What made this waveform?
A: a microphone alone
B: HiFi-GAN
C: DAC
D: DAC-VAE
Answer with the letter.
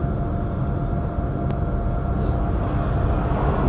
A